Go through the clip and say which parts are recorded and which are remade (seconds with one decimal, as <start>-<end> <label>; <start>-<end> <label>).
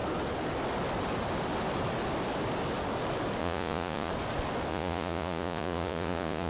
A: 0.0-3.4 recorded; 3.4-4.1 remade; 4.1-4.7 recorded; 4.7-6.5 remade